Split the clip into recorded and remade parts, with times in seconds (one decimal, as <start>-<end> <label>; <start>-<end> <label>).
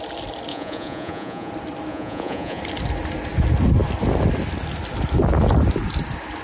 0.0-0.5 recorded; 0.5-1.5 remade; 1.5-1.9 recorded; 1.9-2.6 remade; 2.6-6.4 recorded